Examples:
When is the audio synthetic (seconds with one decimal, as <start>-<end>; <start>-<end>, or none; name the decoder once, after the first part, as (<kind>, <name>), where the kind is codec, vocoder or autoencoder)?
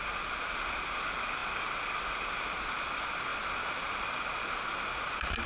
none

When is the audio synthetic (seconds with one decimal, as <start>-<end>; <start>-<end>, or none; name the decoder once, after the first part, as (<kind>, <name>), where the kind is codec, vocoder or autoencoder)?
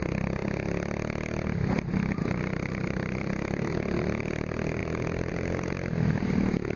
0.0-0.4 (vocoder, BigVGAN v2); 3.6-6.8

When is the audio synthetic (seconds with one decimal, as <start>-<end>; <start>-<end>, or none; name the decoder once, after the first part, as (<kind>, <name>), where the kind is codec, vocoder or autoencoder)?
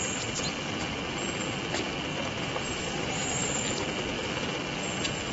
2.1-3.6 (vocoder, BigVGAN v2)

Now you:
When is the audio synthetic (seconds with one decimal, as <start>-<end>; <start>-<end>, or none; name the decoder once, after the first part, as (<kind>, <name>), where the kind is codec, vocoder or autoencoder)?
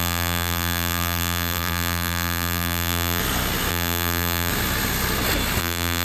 0.0-3.2 (vocoder, BigVGAN v2); 3.7-4.5; 5.6-6.0